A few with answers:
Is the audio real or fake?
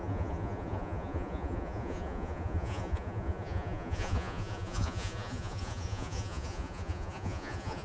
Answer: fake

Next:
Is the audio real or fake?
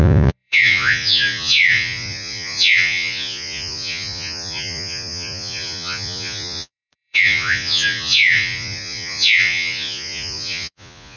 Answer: fake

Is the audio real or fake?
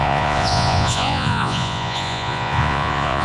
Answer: fake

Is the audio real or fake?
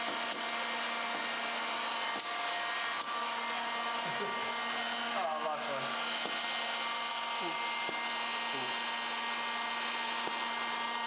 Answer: real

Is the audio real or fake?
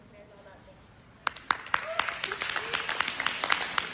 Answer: real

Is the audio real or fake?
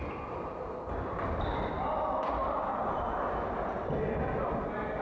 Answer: real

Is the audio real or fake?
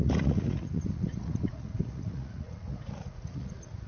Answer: fake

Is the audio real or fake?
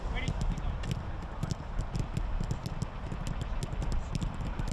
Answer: real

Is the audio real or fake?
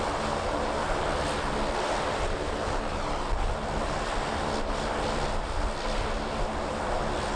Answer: real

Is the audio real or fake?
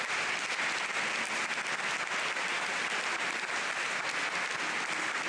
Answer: real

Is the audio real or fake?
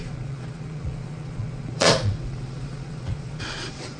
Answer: fake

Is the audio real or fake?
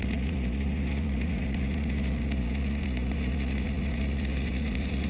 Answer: fake